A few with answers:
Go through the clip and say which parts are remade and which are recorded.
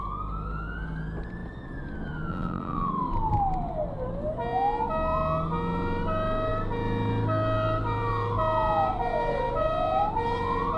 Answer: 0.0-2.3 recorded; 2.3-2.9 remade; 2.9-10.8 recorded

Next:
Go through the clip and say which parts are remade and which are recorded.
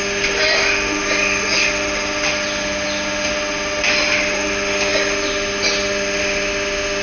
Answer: 0.0-7.0 recorded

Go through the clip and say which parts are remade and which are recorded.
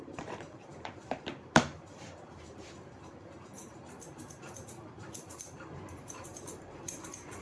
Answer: 0.0-7.4 remade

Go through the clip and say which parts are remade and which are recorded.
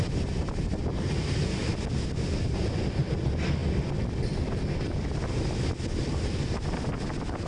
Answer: 0.0-7.5 recorded